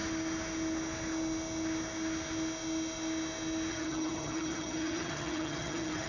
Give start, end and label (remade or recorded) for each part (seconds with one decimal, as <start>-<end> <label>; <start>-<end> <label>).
0.0-3.7 recorded; 3.7-6.1 remade